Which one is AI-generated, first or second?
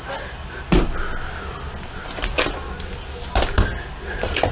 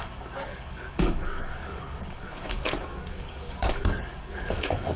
second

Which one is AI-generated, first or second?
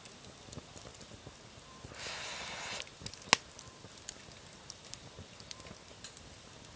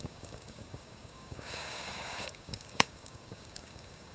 second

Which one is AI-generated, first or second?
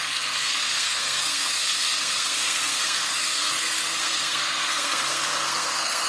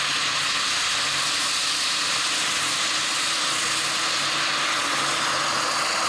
first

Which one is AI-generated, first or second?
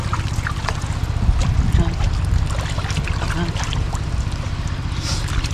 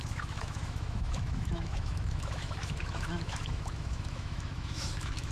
second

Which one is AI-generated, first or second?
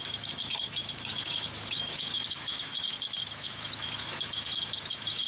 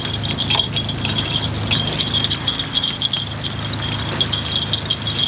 first